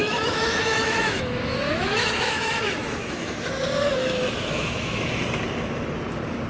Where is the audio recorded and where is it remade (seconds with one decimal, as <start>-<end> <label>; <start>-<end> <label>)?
0.0-3.5 remade; 3.5-4.0 recorded; 4.0-5.0 remade; 5.0-6.5 recorded